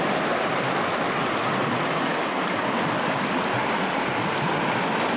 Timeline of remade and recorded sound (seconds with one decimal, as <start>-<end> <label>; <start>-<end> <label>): 0.0-5.2 recorded

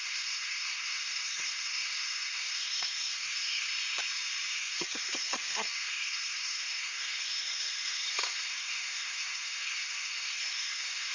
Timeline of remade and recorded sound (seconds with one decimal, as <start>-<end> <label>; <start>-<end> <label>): 0.0-3.7 remade; 3.7-4.6 recorded; 4.6-11.1 remade

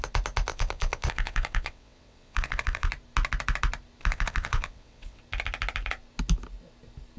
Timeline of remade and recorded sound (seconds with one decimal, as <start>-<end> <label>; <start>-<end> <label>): 0.0-0.5 recorded; 0.5-2.9 remade; 2.9-4.0 recorded; 4.0-5.2 remade; 5.2-7.2 recorded

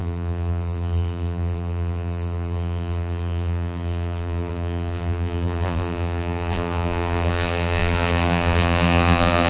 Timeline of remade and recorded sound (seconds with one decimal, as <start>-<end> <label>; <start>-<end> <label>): 0.0-9.5 remade

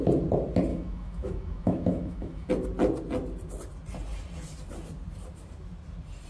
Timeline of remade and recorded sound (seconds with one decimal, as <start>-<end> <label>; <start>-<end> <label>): 0.0-0.7 recorded; 0.7-2.5 remade; 2.5-6.3 recorded

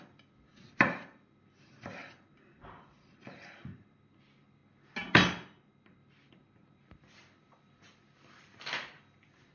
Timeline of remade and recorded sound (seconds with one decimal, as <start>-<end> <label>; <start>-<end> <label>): 0.0-4.6 remade; 4.6-6.3 recorded; 6.3-9.5 remade

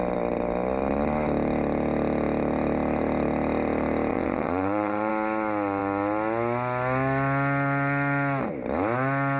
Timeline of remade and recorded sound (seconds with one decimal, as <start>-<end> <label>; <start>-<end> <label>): 0.0-4.1 recorded; 4.1-5.1 remade; 5.1-9.4 recorded

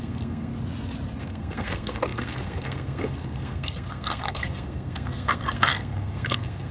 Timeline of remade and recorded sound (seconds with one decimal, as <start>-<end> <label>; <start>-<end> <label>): 0.0-0.5 remade; 0.5-1.2 recorded; 1.2-6.7 remade